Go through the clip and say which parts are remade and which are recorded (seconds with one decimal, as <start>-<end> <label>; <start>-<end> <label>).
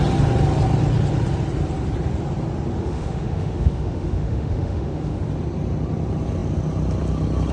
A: 0.0-2.8 recorded; 2.8-5.2 remade; 5.2-7.5 recorded